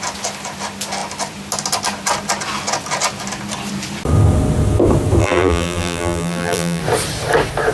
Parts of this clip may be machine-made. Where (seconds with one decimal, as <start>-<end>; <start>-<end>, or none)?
5.2-6.8